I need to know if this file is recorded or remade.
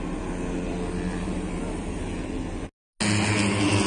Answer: recorded